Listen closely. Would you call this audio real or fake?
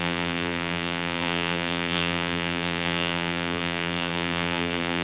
fake